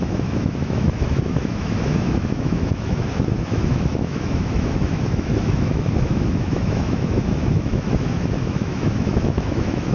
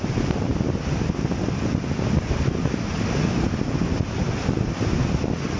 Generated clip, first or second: first